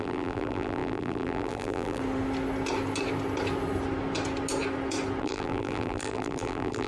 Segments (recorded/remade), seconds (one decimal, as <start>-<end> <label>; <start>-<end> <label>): 0.0-2.0 remade; 2.0-5.2 recorded; 5.2-6.9 remade